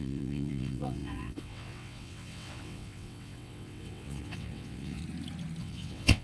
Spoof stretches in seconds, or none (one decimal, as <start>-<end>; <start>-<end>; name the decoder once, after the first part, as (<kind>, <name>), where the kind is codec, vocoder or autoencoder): 0.0-5.0 (vocoder, WaveNeXt); 5.6-6.2